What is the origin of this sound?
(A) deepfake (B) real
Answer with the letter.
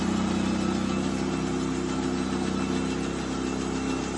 B